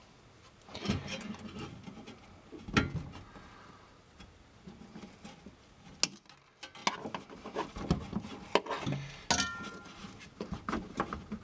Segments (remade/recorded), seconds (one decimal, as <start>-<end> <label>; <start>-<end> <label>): 0.0-11.4 recorded